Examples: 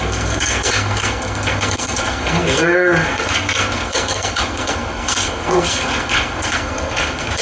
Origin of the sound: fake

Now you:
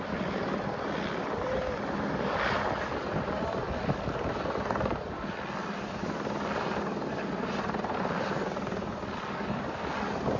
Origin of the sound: real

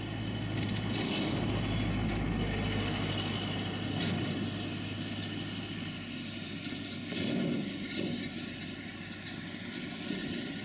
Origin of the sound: real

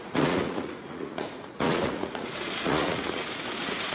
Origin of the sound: fake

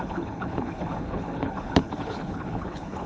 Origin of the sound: fake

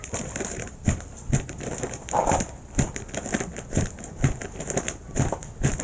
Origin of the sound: fake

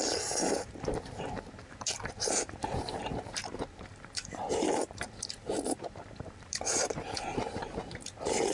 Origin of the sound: fake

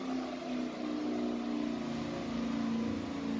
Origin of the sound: real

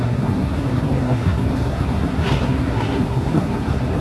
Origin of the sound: fake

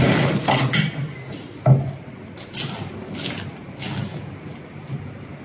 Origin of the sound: real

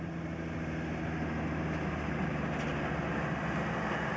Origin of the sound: real